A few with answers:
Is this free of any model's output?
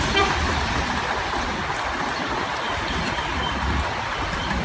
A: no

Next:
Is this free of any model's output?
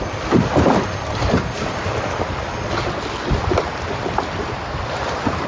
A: no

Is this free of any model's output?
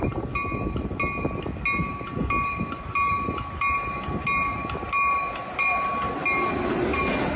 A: yes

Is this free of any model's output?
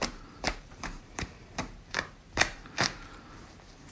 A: no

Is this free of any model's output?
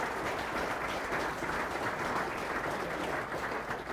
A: no